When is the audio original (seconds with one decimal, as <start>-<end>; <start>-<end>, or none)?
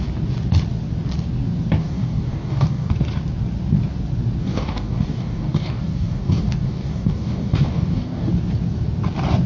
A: 0.0-1.8; 2.9-4.4; 8.3-9.5